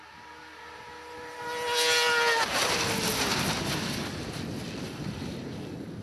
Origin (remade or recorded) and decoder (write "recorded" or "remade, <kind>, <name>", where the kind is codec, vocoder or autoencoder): recorded